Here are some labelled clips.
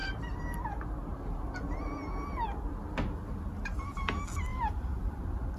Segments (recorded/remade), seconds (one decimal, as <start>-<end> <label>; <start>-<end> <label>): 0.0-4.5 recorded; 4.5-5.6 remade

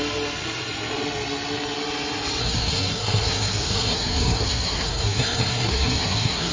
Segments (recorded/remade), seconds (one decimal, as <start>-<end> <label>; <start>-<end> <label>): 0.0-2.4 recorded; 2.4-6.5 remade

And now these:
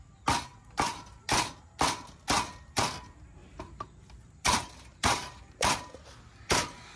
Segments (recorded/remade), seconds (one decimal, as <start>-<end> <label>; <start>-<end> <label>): 0.0-3.4 recorded; 3.4-5.8 remade; 5.8-7.0 recorded

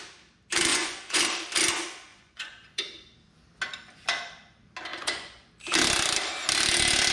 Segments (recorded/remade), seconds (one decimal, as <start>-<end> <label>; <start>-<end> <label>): 0.0-0.7 recorded; 0.7-1.2 remade; 1.2-2.1 recorded; 2.1-2.8 remade; 2.8-4.9 recorded; 4.9-5.5 remade; 5.5-7.1 recorded

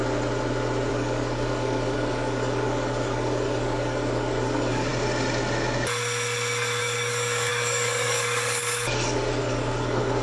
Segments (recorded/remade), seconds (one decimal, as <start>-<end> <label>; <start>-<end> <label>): 0.0-0.9 recorded; 0.9-4.9 remade; 4.9-6.8 recorded; 6.8-10.2 remade

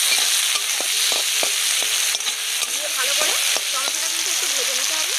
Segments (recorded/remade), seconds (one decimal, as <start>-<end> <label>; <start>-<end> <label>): 0.0-5.2 recorded